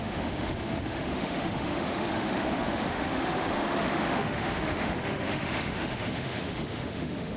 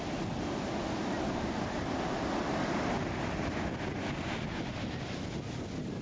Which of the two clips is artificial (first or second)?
first